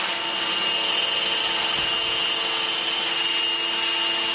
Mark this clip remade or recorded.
recorded